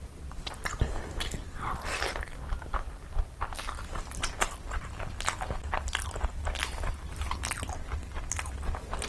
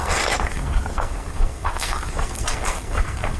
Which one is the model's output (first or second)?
second